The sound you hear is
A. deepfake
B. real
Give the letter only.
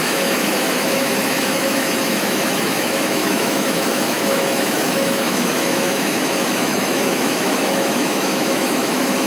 A